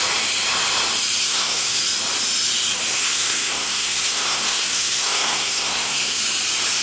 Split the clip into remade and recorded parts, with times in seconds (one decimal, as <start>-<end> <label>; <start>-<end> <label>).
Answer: 0.0-1.2 recorded; 1.2-1.8 remade; 1.8-2.9 recorded; 2.9-6.2 remade; 6.2-6.8 recorded